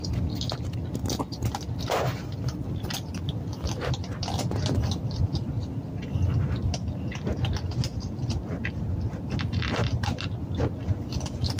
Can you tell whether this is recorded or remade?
recorded